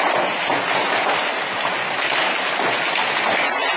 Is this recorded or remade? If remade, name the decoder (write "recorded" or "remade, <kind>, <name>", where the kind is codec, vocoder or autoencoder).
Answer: recorded